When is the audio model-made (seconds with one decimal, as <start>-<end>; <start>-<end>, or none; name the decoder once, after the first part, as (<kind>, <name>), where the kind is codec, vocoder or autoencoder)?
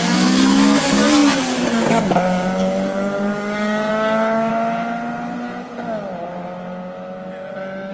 0.0-4.5 (codec, DAC)